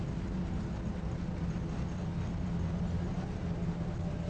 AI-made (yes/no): no